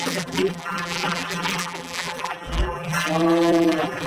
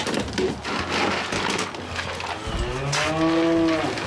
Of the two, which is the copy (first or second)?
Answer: first